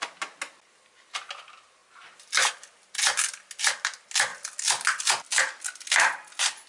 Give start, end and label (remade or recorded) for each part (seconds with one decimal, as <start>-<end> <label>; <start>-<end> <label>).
0.0-6.7 recorded